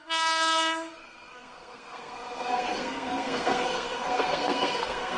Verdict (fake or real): fake